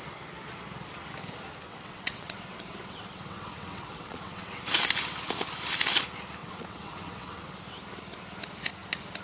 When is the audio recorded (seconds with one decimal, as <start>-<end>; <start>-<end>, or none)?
0.0-1.7; 4.6-6.4; 7.6-9.2

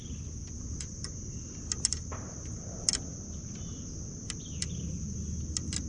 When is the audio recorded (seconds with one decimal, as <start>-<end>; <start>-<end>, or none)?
0.0-5.9

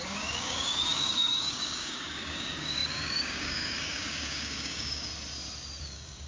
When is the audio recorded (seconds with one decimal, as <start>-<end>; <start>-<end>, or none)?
5.1-5.8